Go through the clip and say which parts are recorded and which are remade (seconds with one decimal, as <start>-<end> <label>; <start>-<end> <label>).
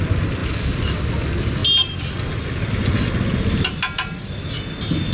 0.0-0.4 recorded; 0.4-1.0 remade; 1.0-5.1 recorded